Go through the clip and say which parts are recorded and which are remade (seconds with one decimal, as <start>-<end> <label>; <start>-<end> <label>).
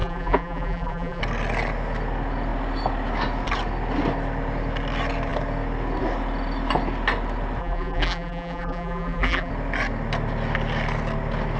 0.0-1.2 remade; 1.2-7.6 recorded; 7.6-9.5 remade; 9.5-11.6 recorded